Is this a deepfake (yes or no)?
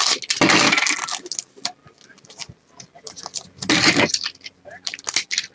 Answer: no